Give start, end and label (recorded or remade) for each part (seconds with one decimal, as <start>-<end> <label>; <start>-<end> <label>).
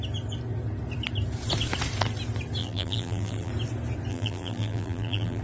0.0-2.6 recorded; 2.6-3.5 remade; 3.5-4.1 recorded; 4.1-5.4 remade